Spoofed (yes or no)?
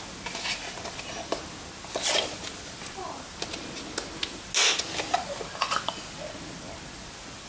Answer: no